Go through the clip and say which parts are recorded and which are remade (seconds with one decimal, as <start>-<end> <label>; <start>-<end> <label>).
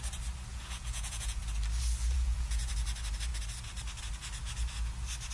0.0-0.5 recorded; 0.5-1.4 remade; 1.4-2.0 recorded; 2.0-2.7 remade; 2.7-5.3 recorded